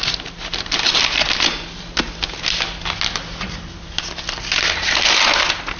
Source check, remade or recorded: recorded